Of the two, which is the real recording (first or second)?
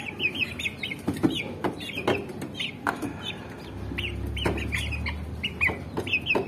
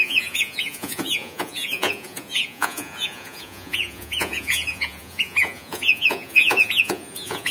first